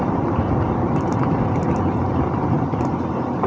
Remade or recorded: remade